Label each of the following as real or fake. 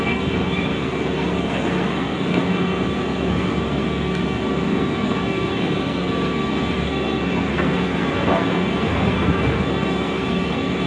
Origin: fake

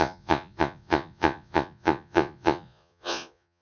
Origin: fake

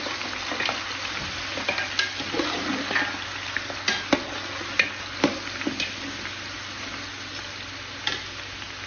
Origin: real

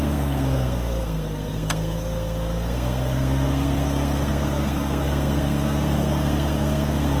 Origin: fake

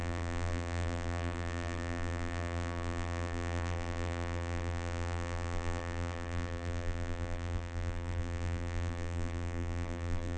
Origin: fake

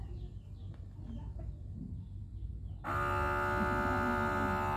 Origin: real